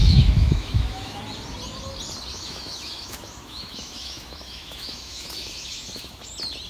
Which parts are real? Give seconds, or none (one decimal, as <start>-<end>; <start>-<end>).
1.2-2.3; 6.3-6.7